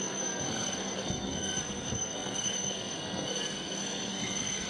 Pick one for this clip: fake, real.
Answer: fake